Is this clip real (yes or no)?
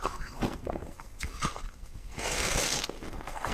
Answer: no